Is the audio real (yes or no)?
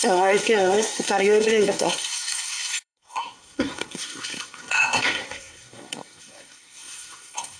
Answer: no